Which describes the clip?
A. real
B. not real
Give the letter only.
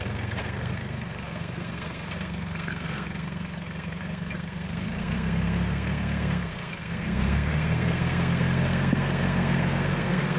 B